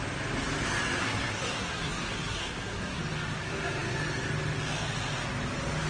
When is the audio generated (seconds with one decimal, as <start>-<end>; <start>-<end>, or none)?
1.0-3.0